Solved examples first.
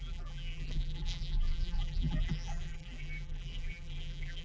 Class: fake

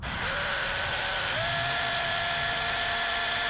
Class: real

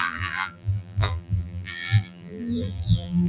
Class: fake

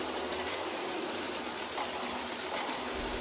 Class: real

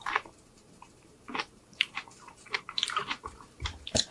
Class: fake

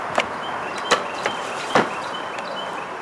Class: fake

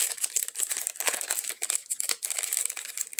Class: real